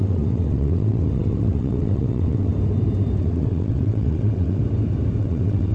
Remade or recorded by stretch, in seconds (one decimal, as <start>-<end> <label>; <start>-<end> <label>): 0.0-2.5 remade; 2.5-3.2 recorded; 3.2-4.6 remade; 4.6-5.2 recorded; 5.2-5.7 remade

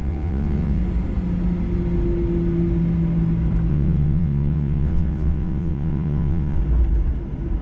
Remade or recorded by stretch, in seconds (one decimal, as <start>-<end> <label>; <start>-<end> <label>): 0.0-0.8 remade; 0.8-3.7 recorded; 3.7-6.6 remade; 6.6-7.6 recorded

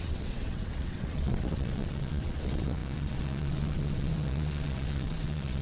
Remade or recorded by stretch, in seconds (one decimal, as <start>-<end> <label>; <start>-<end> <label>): 0.0-5.6 remade

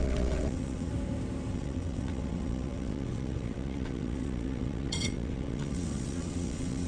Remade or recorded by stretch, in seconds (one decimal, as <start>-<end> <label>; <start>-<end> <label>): 0.0-0.9 remade; 0.9-1.5 recorded; 1.5-6.9 remade